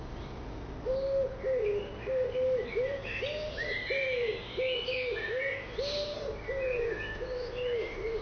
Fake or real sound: real